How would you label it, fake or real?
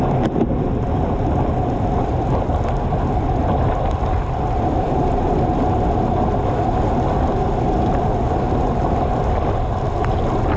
real